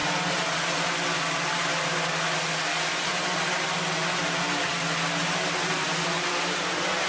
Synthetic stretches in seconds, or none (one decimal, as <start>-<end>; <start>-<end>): none